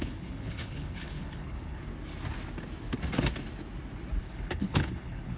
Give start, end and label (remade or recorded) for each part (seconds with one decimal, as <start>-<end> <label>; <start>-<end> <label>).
0.0-1.9 remade; 1.9-4.2 recorded; 4.2-5.4 remade